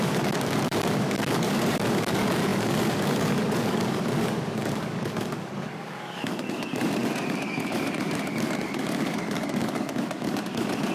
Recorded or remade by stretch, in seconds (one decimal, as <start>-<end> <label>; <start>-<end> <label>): 0.0-10.9 remade